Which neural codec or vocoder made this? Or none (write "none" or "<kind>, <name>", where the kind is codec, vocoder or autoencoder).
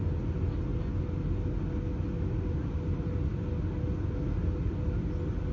none